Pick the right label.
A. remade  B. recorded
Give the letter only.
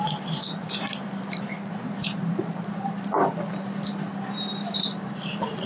A